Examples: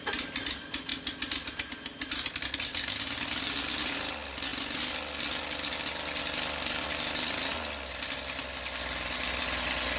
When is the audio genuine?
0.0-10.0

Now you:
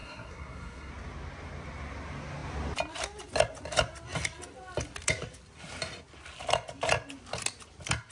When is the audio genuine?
0.9-8.1

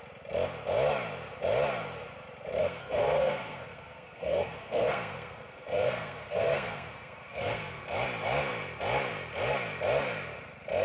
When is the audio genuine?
0.0-2.6; 7.8-10.8